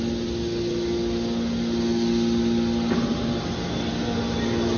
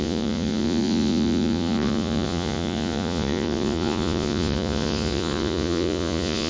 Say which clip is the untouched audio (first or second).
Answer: first